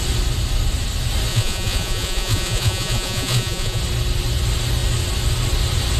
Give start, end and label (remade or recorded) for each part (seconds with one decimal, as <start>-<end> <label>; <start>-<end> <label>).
0.0-1.3 recorded; 1.3-3.8 remade; 3.8-6.0 recorded